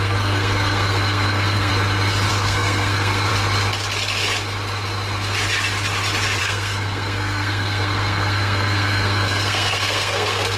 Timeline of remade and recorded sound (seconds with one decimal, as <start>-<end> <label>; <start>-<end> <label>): 0.0-1.7 remade; 1.7-2.3 recorded; 2.3-3.3 remade; 3.3-6.4 recorded; 6.4-10.6 remade